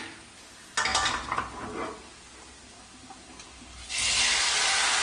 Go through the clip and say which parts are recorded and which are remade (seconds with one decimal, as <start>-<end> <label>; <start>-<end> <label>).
0.0-5.0 recorded